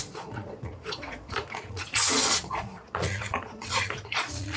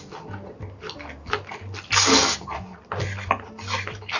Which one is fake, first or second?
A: first